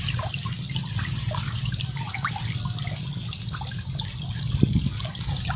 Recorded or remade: recorded